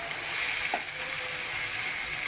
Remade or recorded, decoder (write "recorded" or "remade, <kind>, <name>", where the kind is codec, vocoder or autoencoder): recorded